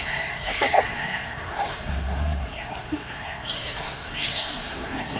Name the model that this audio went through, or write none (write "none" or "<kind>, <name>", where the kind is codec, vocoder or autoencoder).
codec, SNAC